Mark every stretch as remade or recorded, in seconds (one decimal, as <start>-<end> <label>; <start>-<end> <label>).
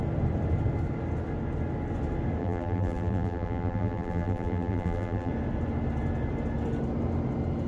0.0-2.4 recorded; 2.4-5.3 remade; 5.3-7.7 recorded